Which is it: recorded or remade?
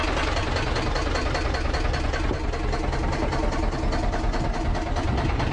recorded